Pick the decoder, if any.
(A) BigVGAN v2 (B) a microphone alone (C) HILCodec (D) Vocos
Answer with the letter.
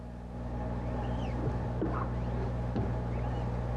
B